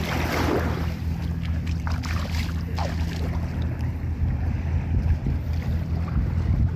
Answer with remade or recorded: recorded